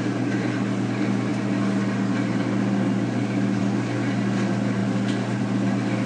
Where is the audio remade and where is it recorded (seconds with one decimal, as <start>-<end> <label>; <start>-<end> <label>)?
0.0-1.3 recorded; 1.3-3.6 remade; 3.6-4.8 recorded; 4.8-5.4 remade; 5.4-6.1 recorded